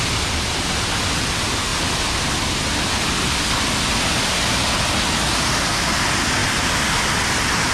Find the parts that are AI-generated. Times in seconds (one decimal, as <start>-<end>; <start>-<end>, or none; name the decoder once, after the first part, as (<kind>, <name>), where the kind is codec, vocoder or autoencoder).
none

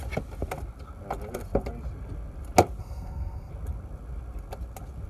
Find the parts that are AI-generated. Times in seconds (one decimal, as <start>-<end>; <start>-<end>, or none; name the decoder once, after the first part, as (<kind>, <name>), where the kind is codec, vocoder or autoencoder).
2.8-3.5 (codec, SNAC)